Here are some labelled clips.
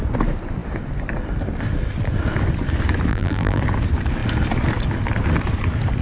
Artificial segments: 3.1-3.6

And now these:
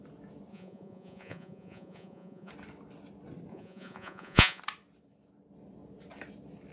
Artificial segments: 0.5-2.5; 3.5-4.6

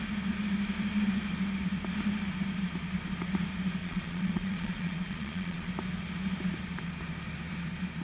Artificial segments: 3.8-5.7

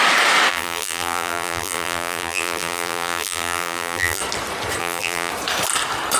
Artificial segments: 0.5-4.2; 4.8-5.3

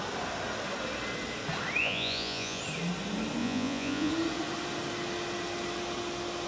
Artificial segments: 1.8-2.6; 3.4-4.1

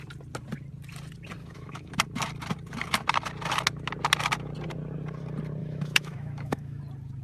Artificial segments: 1.4-1.9; 5.6-6.8

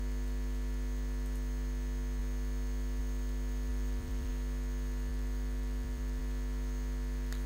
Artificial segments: 3.7-4.3; 5.1-6.2

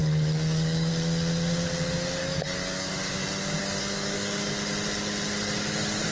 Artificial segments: 0.0-0.9; 2.2-3.2; 3.6-4.5